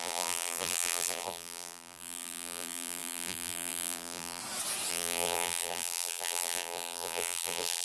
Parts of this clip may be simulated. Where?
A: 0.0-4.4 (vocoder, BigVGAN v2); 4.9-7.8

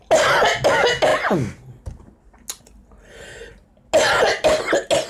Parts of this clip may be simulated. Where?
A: none

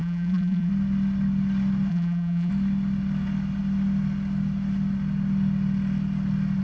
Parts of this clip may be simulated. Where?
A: 0.0-0.7 (vocoder, BigVGAN v2); 1.9-2.5

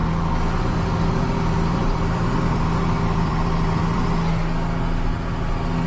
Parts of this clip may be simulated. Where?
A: 1.7-4.0 (vocoder, BigVGAN v2)

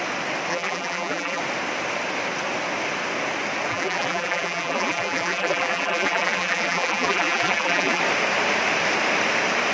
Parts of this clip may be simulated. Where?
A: 0.5-1.4 (vocoder, BigVGAN v2); 3.7-8.0

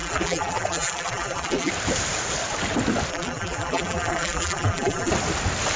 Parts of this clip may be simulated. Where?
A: 0.0-1.7 (vocoder, BigVGAN v2); 3.1-5.1